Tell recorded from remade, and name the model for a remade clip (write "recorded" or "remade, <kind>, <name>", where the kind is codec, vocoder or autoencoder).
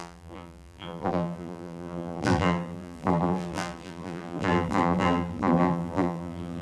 remade, vocoder, BigVGAN v2